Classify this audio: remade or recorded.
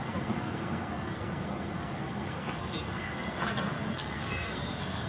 remade